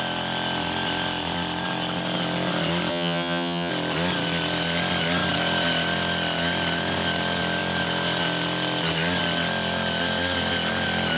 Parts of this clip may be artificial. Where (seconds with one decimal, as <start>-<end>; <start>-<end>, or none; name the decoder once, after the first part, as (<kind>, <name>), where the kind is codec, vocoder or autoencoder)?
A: 2.9-3.7 (vocoder, HiFi-GAN)